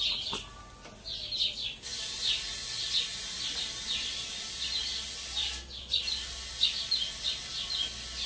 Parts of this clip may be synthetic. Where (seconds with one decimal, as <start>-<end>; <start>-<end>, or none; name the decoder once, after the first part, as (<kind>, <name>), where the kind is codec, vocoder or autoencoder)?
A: none

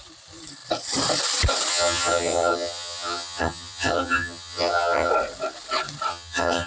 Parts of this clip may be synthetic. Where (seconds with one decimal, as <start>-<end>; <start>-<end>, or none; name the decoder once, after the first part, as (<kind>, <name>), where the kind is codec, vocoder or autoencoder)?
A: 1.7-5.1 (vocoder, HiFi-GAN); 6.1-6.7

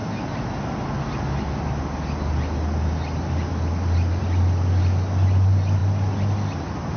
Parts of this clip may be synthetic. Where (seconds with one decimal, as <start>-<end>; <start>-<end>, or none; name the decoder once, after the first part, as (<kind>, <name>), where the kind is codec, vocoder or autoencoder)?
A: none

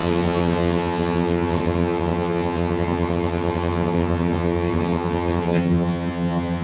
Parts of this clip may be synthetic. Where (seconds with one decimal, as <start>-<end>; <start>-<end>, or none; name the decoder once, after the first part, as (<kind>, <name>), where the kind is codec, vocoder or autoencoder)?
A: 0.0-6.6 (vocoder, HiFi-GAN)

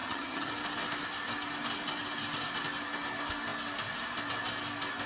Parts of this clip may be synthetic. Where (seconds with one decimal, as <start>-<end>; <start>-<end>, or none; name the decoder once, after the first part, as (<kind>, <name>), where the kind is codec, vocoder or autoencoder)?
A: 0.0-0.5 (vocoder, HiFi-GAN)

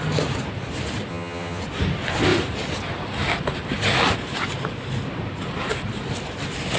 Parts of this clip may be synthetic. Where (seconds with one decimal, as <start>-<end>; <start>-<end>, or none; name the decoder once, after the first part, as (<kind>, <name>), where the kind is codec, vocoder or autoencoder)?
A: 1.1-1.6 (vocoder, HiFi-GAN)

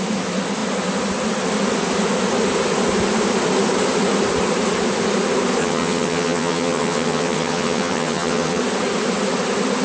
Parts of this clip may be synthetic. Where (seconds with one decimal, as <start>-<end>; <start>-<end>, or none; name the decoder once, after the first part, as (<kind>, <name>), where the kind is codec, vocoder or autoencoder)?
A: 5.6-8.6 (vocoder, HiFi-GAN)